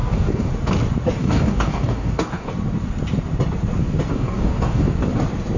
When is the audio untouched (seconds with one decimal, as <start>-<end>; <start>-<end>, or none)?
0.5-1.2; 2.5-4.1; 4.9-5.6